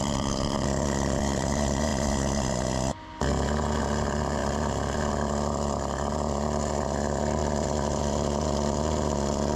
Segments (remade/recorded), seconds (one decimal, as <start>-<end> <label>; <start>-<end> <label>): 0.0-1.9 remade; 1.9-3.8 recorded; 3.8-9.6 remade